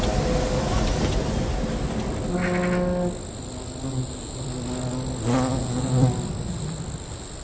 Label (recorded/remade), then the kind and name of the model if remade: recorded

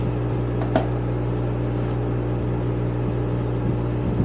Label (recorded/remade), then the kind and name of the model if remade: recorded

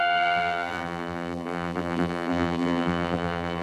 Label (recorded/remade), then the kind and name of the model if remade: remade, vocoder, BigVGAN v2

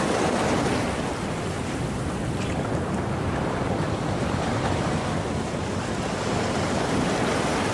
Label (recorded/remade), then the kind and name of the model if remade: remade, vocoder, BigVGAN v2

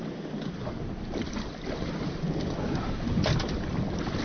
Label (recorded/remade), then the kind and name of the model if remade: remade, vocoder, BigVGAN v2